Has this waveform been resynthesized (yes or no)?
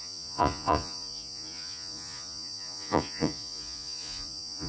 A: yes